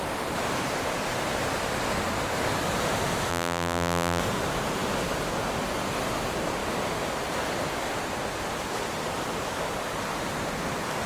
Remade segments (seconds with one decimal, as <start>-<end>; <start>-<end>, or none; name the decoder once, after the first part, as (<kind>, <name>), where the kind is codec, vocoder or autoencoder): 3.3-4.2 (vocoder, BigVGAN v2)